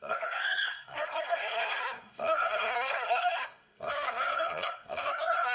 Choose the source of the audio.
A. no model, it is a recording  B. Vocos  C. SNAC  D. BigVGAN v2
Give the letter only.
C